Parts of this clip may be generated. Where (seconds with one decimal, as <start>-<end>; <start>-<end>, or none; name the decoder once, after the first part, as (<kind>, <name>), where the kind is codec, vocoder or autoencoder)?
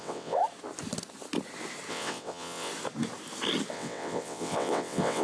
0.0-0.4 (vocoder, WaveNeXt); 1.9-2.7; 3.7-5.2